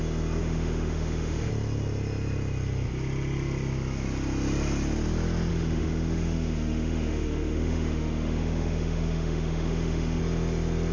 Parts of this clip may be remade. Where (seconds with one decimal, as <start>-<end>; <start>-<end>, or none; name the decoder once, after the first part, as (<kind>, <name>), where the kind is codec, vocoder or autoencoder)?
0.4-1.5 (autoencoder, DAC-VAE); 5.5-10.2